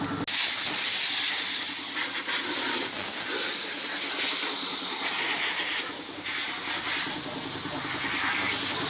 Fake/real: real